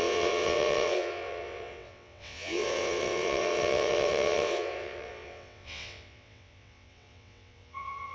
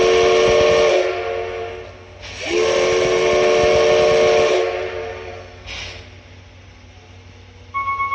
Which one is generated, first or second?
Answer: first